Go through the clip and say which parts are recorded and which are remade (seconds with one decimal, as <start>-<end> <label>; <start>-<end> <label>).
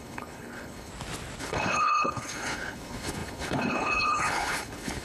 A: 0.0-0.9 remade; 0.9-1.4 recorded; 1.4-5.0 remade